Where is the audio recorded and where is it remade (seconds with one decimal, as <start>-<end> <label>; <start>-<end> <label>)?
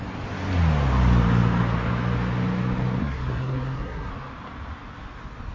0.0-3.0 recorded; 3.0-4.1 remade; 4.1-5.5 recorded